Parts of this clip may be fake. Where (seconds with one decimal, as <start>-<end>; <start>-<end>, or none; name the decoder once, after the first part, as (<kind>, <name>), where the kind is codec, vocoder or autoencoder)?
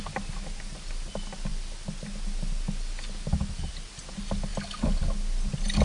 none